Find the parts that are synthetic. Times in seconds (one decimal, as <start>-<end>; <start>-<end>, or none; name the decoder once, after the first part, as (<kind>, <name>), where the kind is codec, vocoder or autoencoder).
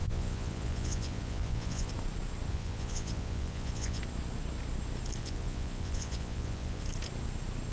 0.0-1.9 (vocoder, Vocos); 2.5-4.0; 5.2-6.8